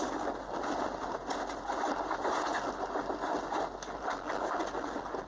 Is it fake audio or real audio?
real